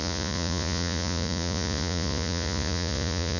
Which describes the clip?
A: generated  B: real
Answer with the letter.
A